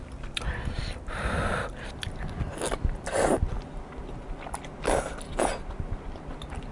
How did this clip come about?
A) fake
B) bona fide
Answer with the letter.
B